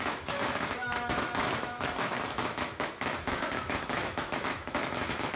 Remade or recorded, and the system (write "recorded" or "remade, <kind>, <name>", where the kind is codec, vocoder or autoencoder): remade, autoencoder, DAC-VAE